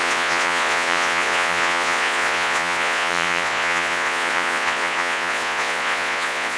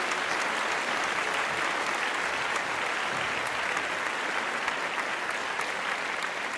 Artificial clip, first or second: first